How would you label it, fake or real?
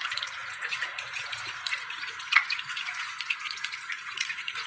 fake